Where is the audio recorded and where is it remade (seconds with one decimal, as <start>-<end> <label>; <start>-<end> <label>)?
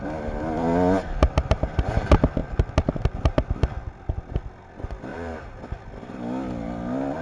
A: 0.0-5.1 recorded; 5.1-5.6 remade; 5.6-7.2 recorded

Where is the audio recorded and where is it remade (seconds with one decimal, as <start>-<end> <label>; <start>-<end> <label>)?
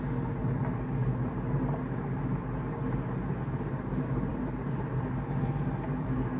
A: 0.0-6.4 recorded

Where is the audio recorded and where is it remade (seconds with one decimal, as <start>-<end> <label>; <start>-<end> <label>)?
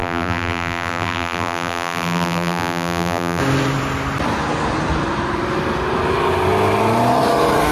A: 0.0-3.4 remade; 3.4-7.7 recorded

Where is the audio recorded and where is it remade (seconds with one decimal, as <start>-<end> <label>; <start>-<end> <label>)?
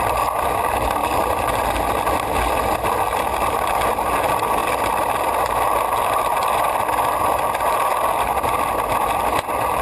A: 0.0-9.8 recorded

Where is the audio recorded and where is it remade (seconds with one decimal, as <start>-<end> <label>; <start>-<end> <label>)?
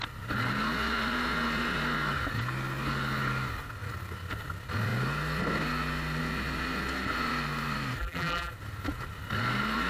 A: 0.0-8.0 recorded; 8.0-8.5 remade; 8.5-9.9 recorded